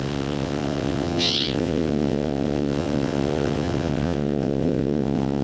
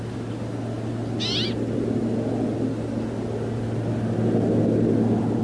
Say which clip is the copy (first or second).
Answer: first